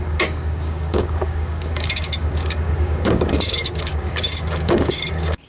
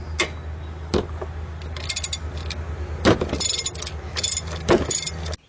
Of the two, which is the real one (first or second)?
second